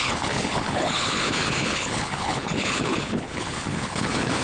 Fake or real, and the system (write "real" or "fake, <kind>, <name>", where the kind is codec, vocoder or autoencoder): fake, codec, HILCodec